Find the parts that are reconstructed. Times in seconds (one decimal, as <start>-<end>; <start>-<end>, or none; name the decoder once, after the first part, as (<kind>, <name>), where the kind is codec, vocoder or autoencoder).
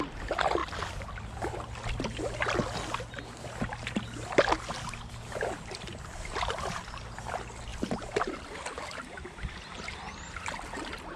none